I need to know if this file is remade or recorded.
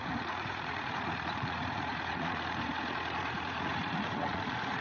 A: remade